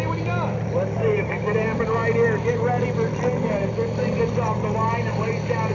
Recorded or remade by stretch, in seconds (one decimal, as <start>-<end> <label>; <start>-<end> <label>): 0.0-5.7 recorded